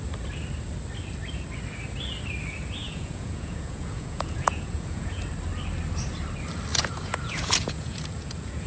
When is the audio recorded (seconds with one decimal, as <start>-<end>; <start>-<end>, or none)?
0.0-2.8; 5.2-6.7